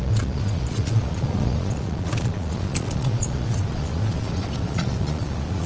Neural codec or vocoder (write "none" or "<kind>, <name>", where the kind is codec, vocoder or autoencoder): vocoder, Vocos